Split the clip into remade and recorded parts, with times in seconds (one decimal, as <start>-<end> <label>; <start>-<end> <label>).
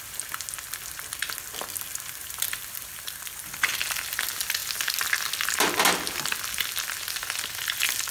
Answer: 0.0-2.2 recorded; 2.2-3.7 remade; 3.7-8.1 recorded